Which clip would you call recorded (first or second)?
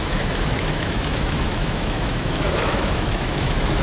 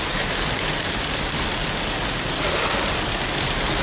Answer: second